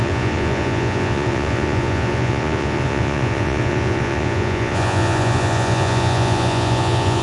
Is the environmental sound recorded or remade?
remade